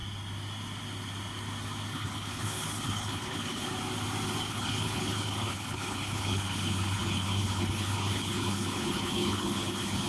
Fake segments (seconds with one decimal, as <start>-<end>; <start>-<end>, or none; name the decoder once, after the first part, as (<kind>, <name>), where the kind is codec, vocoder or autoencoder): 1.9-3.7 (codec, HILCodec); 4.5-10.1